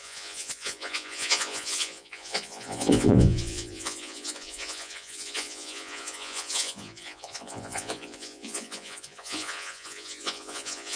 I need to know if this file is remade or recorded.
remade